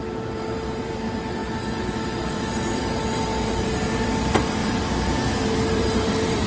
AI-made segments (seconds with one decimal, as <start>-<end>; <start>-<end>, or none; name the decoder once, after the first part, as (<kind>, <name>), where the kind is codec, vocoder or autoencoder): 0.0-4.6 (vocoder, BigVGAN v2); 5.7-6.5